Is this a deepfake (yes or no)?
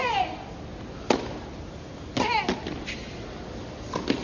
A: no